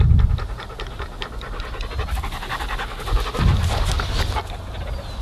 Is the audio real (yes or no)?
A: yes